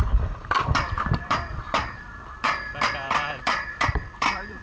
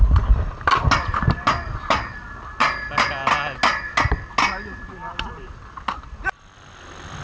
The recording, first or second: second